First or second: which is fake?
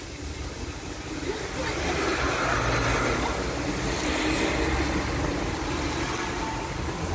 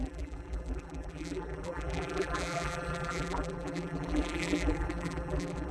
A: second